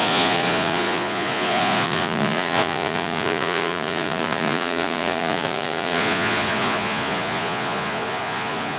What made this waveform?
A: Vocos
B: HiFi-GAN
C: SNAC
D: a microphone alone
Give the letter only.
A